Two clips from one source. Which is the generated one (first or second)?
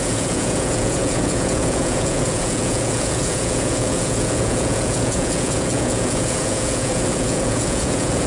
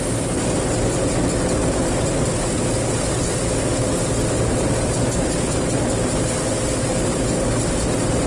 first